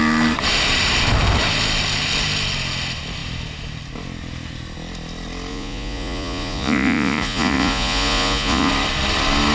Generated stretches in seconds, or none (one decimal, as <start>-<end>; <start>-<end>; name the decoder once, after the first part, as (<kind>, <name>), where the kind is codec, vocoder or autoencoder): 5.5-8.7 (vocoder, Vocos)